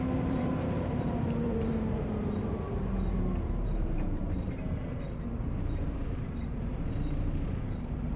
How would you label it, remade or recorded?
remade